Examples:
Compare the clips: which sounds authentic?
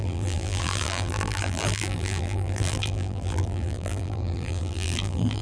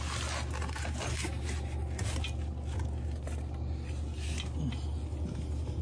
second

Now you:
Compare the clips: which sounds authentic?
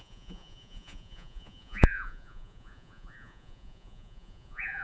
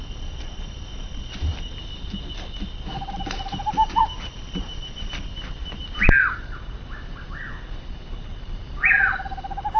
second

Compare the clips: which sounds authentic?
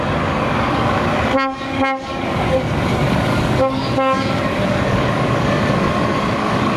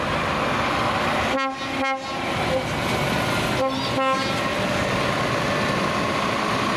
second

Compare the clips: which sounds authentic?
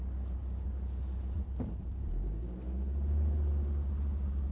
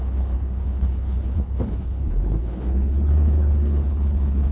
first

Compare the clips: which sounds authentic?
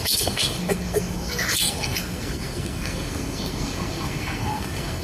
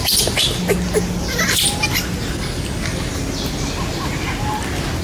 second